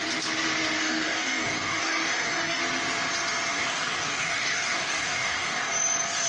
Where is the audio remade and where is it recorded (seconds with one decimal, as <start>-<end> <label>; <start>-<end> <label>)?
0.0-0.8 recorded; 0.8-2.6 remade; 2.6-3.5 recorded; 3.5-5.7 remade; 5.7-6.3 recorded